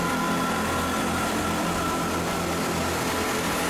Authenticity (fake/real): real